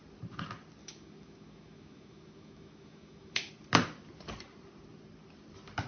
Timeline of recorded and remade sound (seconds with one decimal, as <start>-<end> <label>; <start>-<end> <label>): 0.0-0.8 recorded; 0.8-3.5 remade; 3.5-5.9 recorded